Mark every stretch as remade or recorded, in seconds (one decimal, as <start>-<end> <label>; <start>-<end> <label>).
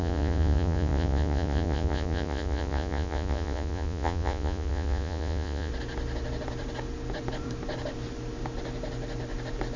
0.0-5.7 remade; 5.7-9.8 recorded